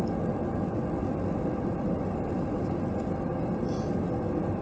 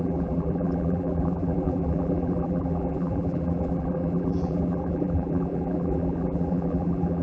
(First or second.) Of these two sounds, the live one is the first